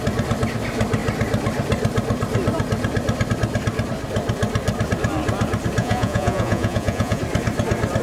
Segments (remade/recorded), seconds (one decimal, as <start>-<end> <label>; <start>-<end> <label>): 0.0-5.8 recorded; 5.8-7.2 remade; 7.2-8.0 recorded